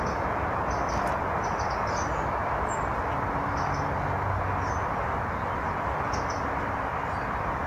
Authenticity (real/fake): real